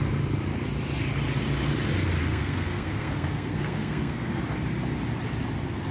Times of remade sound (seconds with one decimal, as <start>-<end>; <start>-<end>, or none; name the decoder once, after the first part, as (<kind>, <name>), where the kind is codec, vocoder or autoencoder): 2.2-4.4 (codec, SNAC)